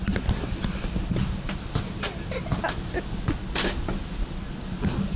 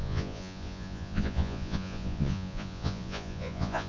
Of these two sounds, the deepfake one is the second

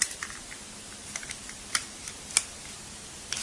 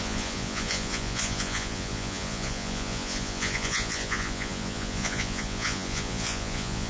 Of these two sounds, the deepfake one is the second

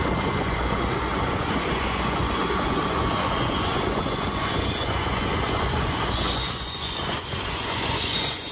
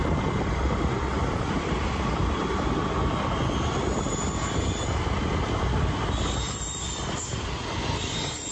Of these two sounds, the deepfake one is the first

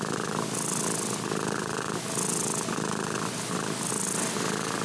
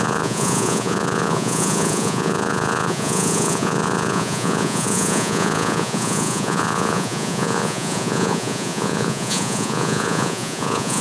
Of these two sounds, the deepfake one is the second